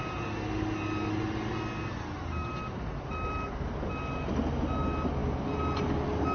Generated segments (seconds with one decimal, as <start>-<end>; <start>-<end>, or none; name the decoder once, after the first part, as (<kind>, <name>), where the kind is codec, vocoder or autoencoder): none